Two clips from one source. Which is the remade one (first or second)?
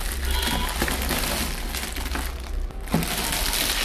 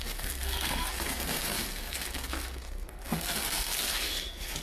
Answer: second